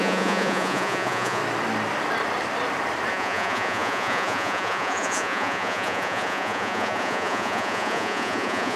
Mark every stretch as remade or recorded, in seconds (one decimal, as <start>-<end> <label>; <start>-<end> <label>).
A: 0.0-1.4 remade; 1.4-3.1 recorded; 3.1-8.8 remade